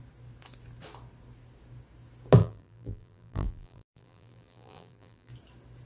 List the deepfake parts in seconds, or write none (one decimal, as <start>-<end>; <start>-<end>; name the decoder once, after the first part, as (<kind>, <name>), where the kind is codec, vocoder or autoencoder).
2.4-5.3 (vocoder, BigVGAN v2)